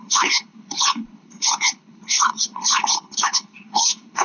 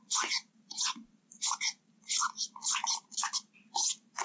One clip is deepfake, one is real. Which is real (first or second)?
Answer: second